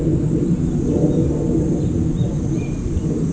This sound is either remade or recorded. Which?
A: recorded